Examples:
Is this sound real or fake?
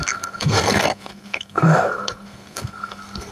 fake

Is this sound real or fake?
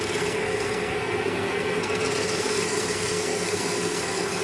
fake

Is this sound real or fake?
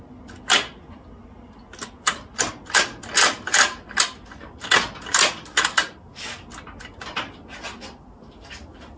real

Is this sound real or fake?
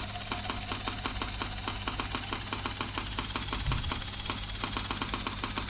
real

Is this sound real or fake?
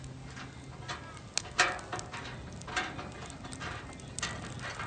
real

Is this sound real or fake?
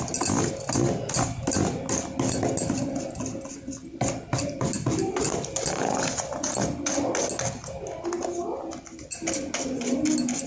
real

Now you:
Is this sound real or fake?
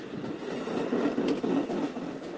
real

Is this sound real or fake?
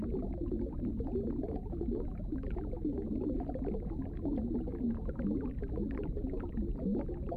real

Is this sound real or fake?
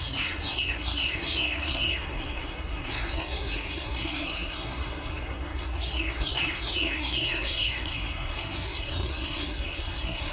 fake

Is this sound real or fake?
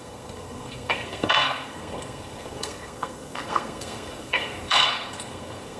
fake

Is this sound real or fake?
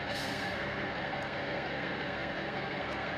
fake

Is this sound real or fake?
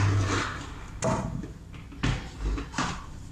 real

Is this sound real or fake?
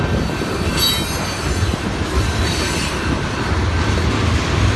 real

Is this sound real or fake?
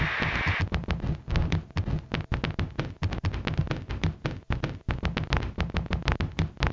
real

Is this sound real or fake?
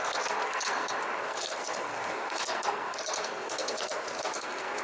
fake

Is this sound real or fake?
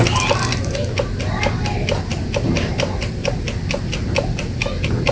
real